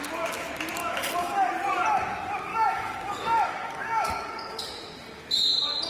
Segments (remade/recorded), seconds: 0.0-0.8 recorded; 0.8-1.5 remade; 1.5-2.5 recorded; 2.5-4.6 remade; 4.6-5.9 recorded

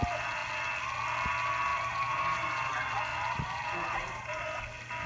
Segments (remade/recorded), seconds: 0.0-1.7 recorded; 1.7-2.7 remade; 2.7-3.1 recorded; 3.1-4.6 remade; 4.6-5.1 recorded

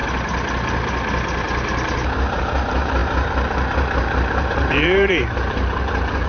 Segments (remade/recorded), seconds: 0.0-2.4 recorded; 2.4-6.3 remade

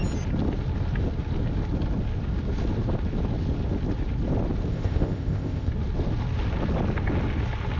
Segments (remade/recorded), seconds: 0.0-4.7 recorded; 4.7-5.7 remade; 5.7-7.8 recorded